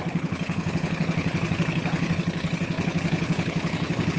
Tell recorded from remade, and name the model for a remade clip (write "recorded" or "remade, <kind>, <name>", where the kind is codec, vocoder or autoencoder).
remade, codec, HILCodec